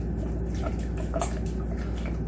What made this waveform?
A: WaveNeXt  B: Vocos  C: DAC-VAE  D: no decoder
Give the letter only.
D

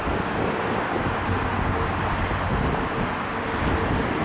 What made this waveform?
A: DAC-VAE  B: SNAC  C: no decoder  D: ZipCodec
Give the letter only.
C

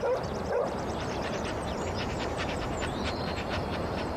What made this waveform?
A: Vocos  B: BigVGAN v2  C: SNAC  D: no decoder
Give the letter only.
B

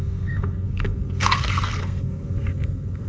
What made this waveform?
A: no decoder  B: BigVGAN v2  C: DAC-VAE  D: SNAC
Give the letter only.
D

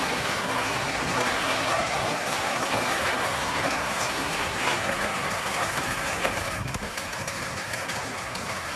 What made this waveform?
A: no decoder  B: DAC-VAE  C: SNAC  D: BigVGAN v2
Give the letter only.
C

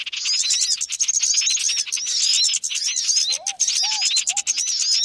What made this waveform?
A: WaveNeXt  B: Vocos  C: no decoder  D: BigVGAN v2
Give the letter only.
C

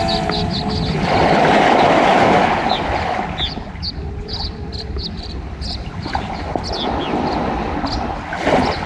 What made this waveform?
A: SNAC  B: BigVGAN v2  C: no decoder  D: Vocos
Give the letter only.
C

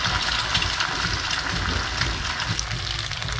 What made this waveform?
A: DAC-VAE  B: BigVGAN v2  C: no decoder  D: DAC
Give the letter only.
C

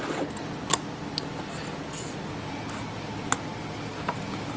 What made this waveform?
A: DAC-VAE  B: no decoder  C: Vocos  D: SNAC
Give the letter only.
B